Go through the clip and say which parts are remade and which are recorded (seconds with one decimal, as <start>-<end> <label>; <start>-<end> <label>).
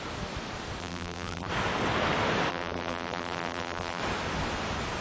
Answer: 0.0-0.8 recorded; 0.8-1.5 remade; 1.5-2.5 recorded; 2.5-4.0 remade; 4.0-5.0 recorded